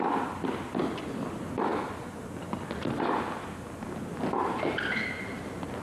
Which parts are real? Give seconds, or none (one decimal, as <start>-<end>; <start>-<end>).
0.0-5.8

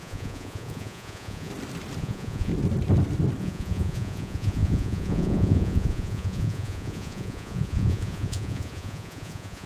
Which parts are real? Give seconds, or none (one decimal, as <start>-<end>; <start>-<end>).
1.5-2.0; 2.5-3.4

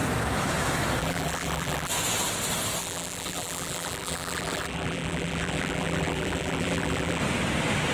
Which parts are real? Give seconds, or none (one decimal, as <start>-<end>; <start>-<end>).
0.0-1.0; 1.9-2.8; 7.2-7.9

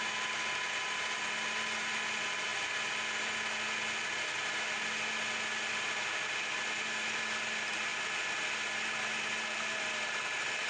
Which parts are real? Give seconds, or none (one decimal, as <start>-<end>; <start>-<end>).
0.0-10.7

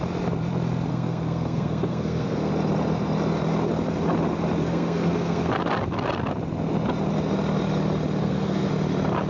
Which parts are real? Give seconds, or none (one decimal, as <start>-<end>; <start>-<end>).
0.0-0.9; 2.5-4.6; 5.5-8.2; 8.7-9.3

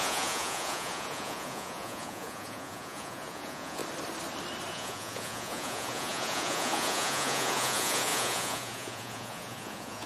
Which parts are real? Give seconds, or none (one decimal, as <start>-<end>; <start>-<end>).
3.8-4.7